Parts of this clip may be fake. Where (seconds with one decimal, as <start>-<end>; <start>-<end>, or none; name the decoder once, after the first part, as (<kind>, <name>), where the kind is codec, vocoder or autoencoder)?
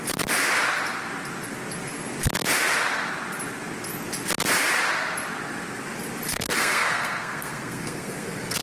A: 6.3-8.6 (codec, SNAC)